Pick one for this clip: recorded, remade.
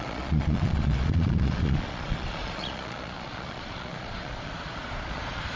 remade